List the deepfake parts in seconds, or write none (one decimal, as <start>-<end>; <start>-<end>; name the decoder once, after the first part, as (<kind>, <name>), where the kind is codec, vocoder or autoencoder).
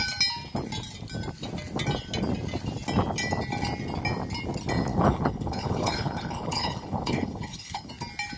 4.9-7.9 (codec, HILCodec)